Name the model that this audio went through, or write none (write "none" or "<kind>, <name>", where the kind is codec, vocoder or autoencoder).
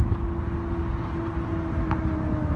none